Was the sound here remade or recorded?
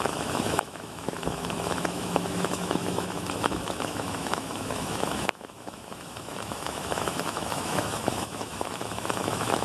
remade